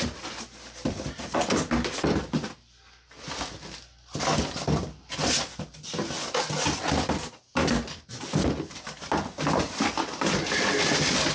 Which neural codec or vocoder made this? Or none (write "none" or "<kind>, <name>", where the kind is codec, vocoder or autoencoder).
none